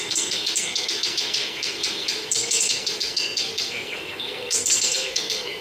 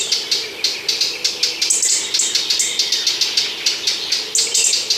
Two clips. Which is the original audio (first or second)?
second